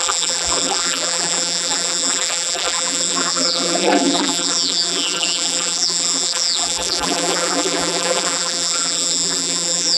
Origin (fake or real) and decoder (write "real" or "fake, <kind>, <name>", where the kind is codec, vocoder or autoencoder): fake, vocoder, BigVGAN v2